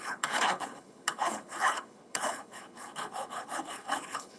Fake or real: fake